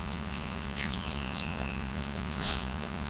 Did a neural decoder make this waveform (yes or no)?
yes